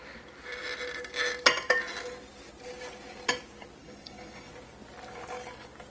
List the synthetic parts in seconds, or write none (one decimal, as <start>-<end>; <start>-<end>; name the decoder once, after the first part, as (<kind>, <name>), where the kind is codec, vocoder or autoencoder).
3.8-4.5 (codec, HILCodec)